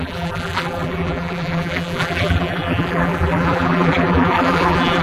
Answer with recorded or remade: remade